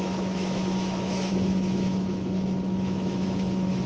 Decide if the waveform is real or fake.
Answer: fake